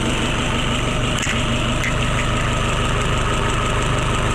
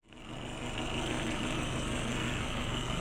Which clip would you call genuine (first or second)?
first